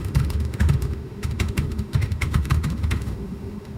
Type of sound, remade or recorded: remade